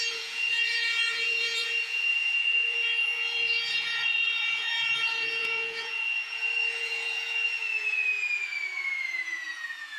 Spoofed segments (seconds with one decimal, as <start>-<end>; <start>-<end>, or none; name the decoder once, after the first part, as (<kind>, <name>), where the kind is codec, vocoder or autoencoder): 0.0-10.0 (vocoder, Vocos)